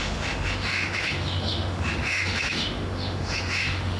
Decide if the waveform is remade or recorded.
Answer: remade